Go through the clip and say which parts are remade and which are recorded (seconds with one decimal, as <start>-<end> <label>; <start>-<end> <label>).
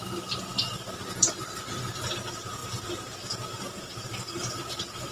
0.0-5.1 recorded